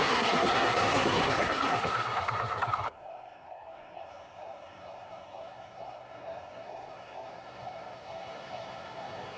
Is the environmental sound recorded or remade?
remade